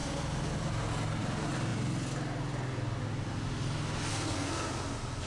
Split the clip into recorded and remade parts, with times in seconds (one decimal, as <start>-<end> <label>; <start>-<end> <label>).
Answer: 0.0-4.1 recorded; 4.1-4.7 remade; 4.7-5.3 recorded